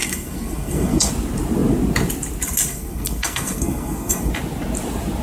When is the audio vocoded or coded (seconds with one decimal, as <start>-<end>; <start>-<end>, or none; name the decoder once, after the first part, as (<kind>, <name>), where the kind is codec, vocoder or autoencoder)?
0.0-1.1 (codec, SNAC); 2.7-4.3